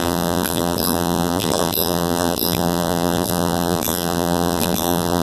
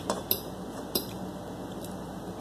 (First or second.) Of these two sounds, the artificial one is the first